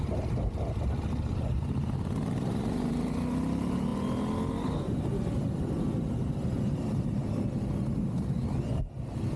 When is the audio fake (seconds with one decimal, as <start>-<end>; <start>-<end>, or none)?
none